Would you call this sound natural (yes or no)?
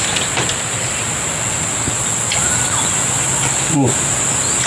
yes